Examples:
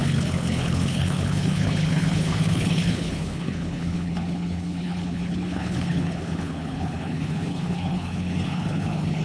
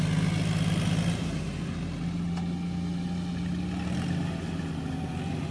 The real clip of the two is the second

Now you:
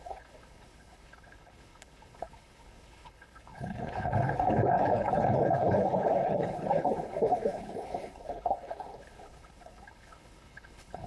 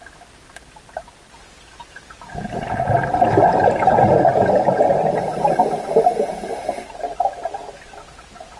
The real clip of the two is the second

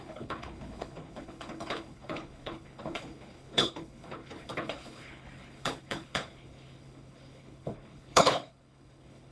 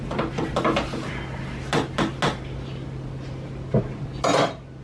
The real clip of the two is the second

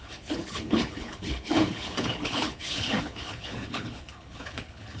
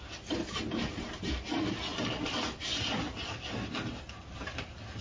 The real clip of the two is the second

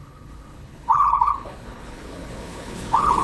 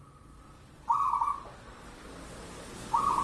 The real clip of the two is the second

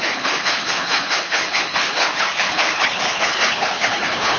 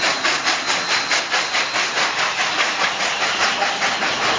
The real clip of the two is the second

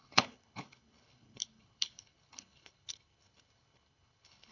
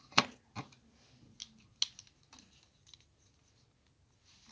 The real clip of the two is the second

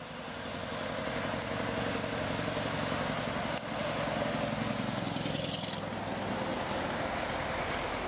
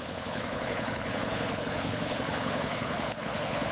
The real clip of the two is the first